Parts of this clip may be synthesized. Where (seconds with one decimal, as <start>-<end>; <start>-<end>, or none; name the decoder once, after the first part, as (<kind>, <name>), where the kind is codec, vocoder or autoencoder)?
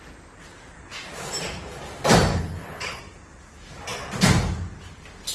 2.3-3.0 (codec, HILCodec)